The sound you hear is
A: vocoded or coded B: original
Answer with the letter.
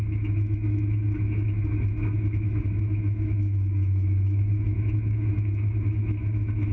A